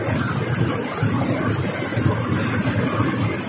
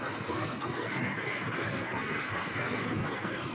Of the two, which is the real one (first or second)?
first